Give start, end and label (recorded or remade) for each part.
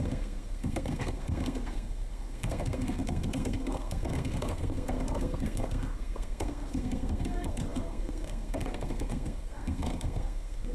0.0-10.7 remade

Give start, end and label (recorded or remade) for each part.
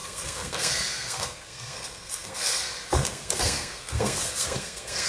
0.0-5.1 remade